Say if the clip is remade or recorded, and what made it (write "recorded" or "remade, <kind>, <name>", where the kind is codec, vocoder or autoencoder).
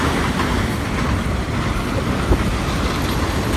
recorded